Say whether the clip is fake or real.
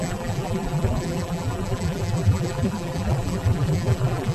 fake